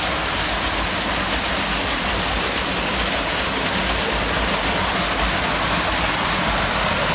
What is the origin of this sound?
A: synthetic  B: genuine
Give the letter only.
B